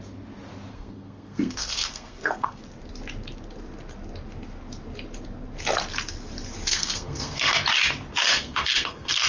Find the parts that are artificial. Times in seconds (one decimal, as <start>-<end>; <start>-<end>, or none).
0.7-2.6; 6.7-7.5; 8.3-9.3